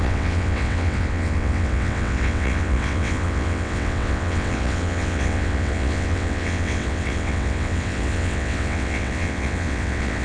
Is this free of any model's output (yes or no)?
no